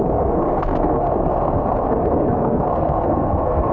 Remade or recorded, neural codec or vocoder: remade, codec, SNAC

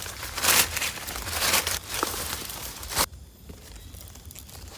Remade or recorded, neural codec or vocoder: remade, vocoder, BigVGAN v2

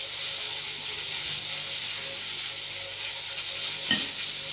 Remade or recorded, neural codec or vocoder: recorded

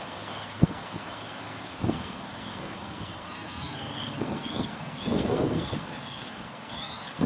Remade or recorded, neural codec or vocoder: remade, codec, SNAC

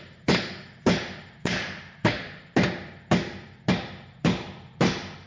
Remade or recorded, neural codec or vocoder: recorded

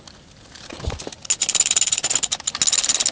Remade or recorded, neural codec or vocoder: recorded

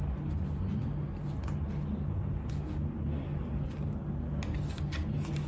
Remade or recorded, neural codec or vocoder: recorded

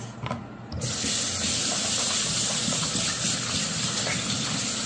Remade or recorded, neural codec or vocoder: recorded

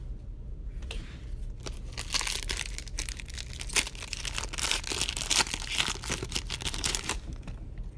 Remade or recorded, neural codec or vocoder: recorded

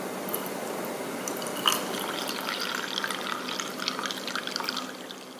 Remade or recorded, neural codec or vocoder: recorded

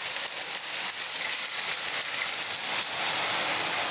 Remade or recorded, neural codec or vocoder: recorded